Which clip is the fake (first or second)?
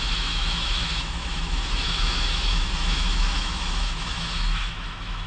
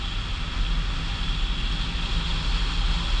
first